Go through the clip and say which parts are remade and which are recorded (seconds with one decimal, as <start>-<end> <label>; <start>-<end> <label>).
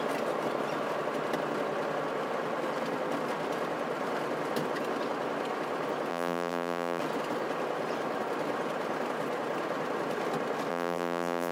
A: 0.0-6.1 recorded; 6.1-7.0 remade; 7.0-10.7 recorded; 10.7-11.5 remade